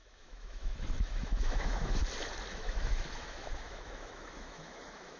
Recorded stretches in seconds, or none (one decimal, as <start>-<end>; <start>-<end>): 2.0-2.5